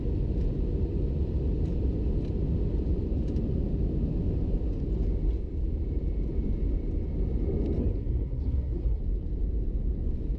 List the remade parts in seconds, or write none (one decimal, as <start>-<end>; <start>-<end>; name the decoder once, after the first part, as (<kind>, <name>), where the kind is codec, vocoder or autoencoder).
7.8-9.0 (codec, SNAC)